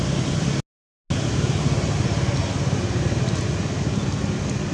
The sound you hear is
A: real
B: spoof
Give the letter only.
A